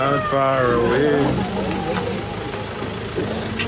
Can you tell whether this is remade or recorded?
recorded